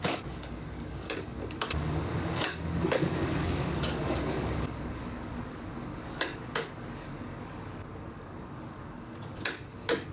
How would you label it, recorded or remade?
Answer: remade